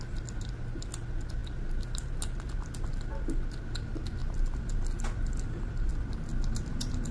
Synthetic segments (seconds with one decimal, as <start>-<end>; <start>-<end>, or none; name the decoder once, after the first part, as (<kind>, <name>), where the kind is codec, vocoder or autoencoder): none